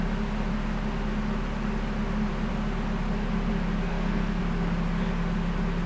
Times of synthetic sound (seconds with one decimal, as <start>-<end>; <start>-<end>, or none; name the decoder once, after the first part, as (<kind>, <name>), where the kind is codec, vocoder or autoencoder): 3.9-4.4 (codec, SNAC)